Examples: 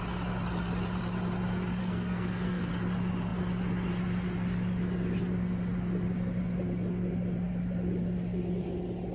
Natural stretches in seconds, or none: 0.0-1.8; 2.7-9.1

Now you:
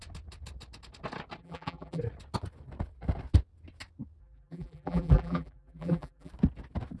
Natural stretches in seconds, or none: 0.0-1.4; 2.0-4.2; 6.3-7.0

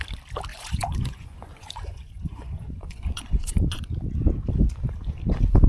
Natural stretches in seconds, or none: 0.0-0.5; 3.9-5.7

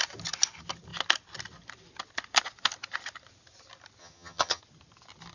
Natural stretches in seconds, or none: 0.0-4.0; 4.6-5.3

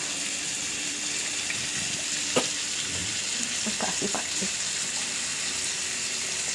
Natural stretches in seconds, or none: 0.0-6.5

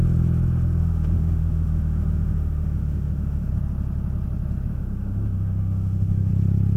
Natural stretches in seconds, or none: 0.0-0.8; 3.5-4.7; 6.3-6.8

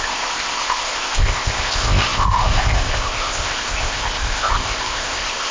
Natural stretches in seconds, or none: none

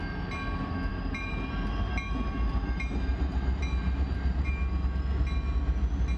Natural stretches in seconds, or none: 0.0-0.9; 4.6-6.2